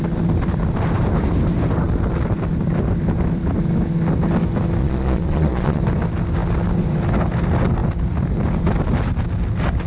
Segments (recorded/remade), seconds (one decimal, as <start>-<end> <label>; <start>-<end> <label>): 0.0-4.8 recorded; 4.8-5.8 remade; 5.8-9.9 recorded